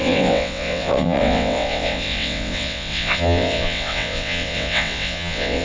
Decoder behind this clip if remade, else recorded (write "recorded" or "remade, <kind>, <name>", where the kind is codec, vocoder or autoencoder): remade, vocoder, WaveNeXt